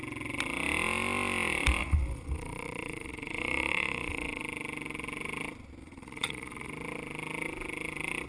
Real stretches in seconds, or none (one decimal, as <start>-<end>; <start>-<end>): 0.0-1.8; 4.4-5.8; 6.7-8.3